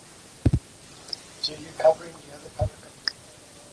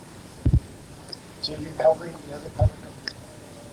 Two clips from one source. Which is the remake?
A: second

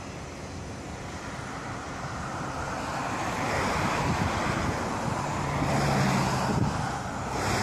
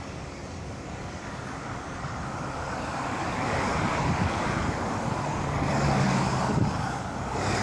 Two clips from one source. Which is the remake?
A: second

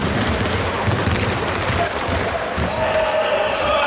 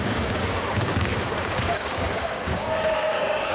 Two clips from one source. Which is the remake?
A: second